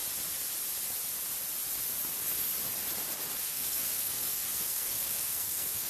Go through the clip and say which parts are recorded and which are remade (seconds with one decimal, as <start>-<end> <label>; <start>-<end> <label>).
0.0-3.4 recorded; 3.4-5.9 remade

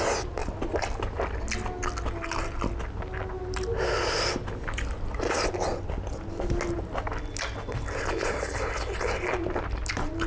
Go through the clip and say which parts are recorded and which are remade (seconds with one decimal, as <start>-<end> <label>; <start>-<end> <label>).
0.0-10.3 recorded